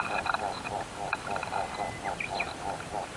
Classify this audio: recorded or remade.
recorded